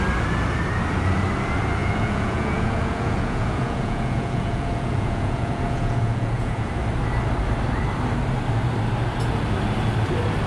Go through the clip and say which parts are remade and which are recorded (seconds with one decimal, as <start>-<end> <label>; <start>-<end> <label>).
0.0-1.8 recorded; 1.8-6.7 remade; 6.7-10.5 recorded